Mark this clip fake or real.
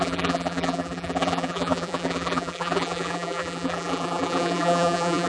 fake